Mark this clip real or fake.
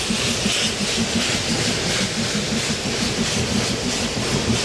real